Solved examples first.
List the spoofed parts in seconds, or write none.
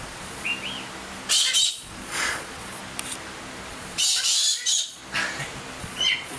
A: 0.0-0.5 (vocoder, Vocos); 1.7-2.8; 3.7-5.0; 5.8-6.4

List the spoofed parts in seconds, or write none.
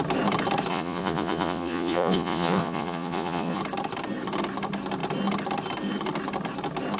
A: 0.7-3.6 (vocoder, Vocos)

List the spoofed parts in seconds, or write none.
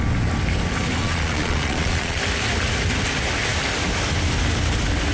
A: 1.0-2.2 (vocoder, Vocos)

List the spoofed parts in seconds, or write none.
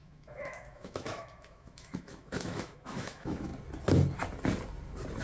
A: 0.0-3.5 (autoencoder, DAC-VAE)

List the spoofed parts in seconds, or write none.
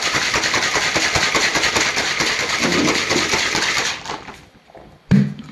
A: 1.5-2.3 (vocoder, BigVGAN v2); 2.7-4.9